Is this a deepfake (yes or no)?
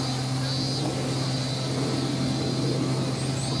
no